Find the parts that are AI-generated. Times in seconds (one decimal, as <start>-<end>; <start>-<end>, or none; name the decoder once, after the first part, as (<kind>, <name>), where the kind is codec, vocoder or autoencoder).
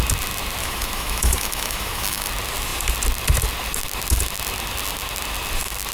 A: 0.6-2.3 (autoencoder, DAC-VAE)